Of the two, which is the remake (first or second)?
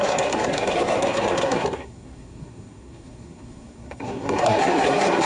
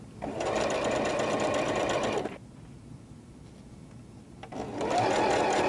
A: first